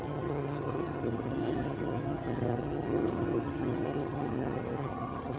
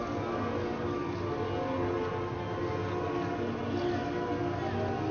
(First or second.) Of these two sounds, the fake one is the first